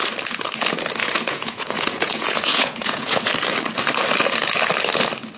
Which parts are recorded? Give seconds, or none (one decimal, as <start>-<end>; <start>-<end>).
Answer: 0.0-1.0; 3.3-5.4